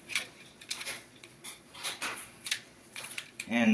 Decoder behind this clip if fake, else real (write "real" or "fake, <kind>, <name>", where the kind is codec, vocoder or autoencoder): fake, vocoder, Vocos